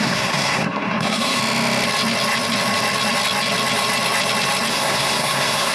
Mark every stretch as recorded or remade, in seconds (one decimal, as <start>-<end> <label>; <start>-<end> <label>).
0.0-1.4 remade; 1.4-4.7 recorded; 4.7-5.7 remade